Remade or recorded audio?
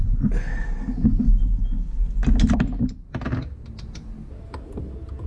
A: recorded